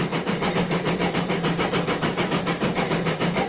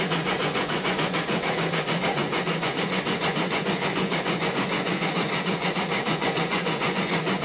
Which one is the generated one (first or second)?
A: second